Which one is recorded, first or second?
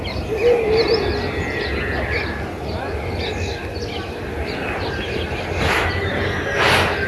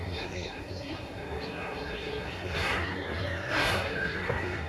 first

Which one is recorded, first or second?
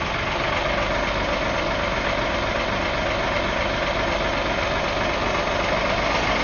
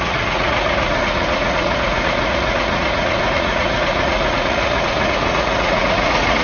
first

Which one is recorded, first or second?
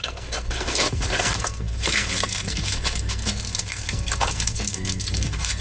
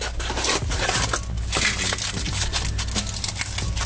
second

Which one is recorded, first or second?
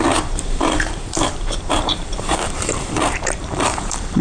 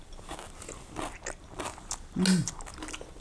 second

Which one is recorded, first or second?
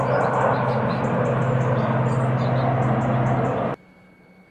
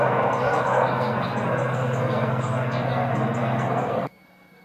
first